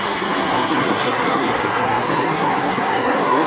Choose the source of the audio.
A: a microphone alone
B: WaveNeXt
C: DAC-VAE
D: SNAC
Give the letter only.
D